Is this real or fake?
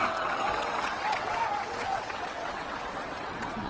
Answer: fake